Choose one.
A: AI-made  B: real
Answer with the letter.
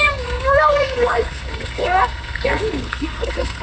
A